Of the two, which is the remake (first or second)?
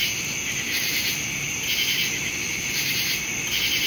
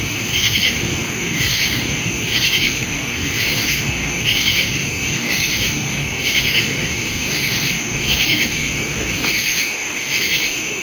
second